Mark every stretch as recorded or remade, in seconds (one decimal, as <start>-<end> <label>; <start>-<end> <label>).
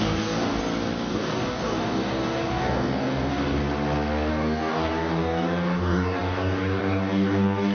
0.0-0.6 remade; 0.6-1.1 recorded; 1.1-3.6 remade; 3.6-4.3 recorded; 4.3-7.7 remade